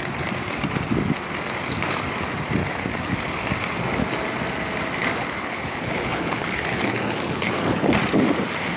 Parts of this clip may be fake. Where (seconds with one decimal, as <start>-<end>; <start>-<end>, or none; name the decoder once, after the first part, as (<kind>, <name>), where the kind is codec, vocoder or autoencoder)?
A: 5.4-7.9 (codec, HILCodec)